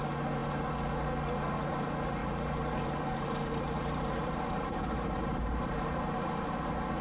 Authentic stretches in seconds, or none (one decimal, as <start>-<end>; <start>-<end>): 0.0-2.2; 6.3-7.0